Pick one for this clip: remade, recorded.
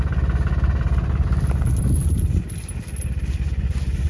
recorded